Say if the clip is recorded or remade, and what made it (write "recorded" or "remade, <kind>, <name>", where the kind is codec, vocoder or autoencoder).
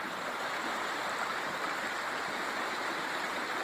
recorded